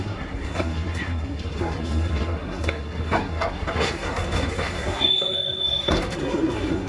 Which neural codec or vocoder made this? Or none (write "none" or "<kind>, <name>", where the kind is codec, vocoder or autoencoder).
codec, SNAC